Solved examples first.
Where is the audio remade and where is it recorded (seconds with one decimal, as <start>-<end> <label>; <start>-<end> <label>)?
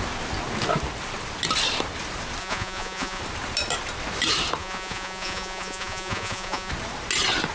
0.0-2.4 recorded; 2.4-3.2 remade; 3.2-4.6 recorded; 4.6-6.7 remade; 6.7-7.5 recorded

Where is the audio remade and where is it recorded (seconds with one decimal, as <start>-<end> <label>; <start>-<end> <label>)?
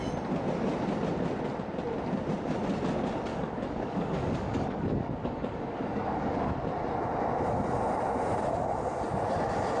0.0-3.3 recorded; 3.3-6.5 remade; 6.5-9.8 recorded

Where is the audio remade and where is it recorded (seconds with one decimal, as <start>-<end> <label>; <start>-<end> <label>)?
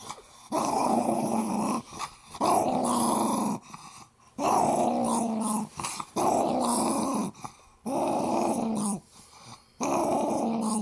0.0-0.6 recorded; 0.6-1.5 remade; 1.5-10.8 recorded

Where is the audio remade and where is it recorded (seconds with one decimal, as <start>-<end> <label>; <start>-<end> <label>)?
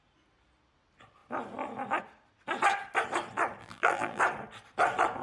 0.0-3.6 recorded; 3.6-4.2 remade; 4.2-5.2 recorded